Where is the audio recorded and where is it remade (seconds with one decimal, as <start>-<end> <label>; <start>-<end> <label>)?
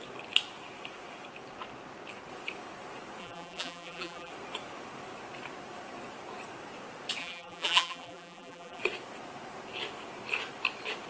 0.0-3.2 recorded; 3.2-4.3 remade; 4.3-7.2 recorded; 7.2-8.8 remade; 8.8-11.1 recorded